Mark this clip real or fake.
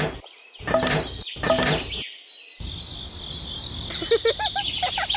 real